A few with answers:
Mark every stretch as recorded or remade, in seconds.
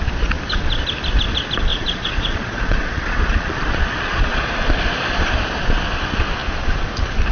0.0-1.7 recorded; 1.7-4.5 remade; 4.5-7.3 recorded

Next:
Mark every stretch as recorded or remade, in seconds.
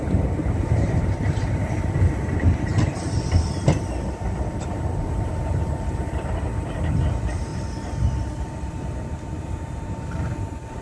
0.0-2.7 remade; 2.7-4.5 recorded; 4.5-7.5 remade; 7.5-8.7 recorded; 8.7-10.8 remade